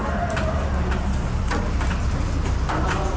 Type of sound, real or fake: real